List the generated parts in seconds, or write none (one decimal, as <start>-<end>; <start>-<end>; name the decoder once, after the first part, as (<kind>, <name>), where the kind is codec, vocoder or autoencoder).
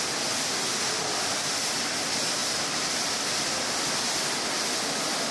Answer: none